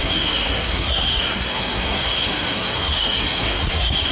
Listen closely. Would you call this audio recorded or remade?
remade